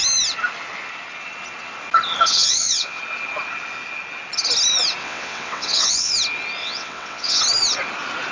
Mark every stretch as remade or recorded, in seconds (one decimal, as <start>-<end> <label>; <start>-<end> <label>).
0.0-2.3 recorded; 2.3-3.0 remade; 3.0-5.0 recorded; 5.0-6.1 remade; 6.1-6.6 recorded; 6.6-7.4 remade; 7.4-8.3 recorded